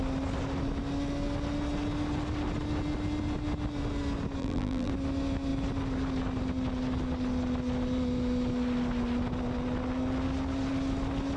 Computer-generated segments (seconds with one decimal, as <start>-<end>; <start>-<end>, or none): 4.4-4.9